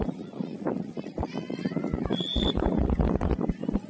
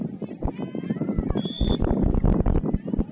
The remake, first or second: first